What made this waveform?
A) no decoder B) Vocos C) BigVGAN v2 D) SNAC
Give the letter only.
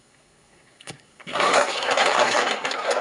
D